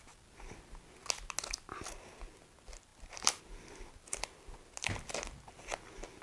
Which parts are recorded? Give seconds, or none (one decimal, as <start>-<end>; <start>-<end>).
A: 0.0-6.2